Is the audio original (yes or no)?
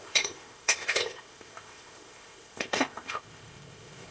no